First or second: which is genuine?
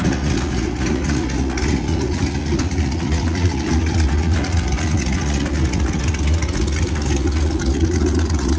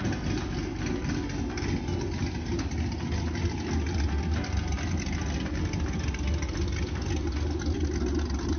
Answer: second